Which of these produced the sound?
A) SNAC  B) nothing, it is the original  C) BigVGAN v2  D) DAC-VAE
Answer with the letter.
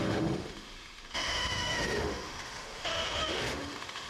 D